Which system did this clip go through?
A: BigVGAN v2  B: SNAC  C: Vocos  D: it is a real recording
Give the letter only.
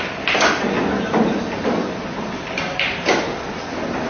D